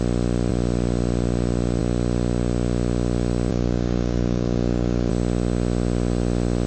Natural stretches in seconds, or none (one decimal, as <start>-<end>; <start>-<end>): 0.0-3.5; 5.1-6.7